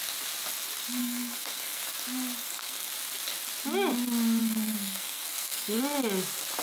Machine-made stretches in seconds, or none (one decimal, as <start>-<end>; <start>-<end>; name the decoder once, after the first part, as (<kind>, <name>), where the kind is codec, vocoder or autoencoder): 1.0-1.8 (codec, SNAC); 2.4-2.9; 4.4-5.8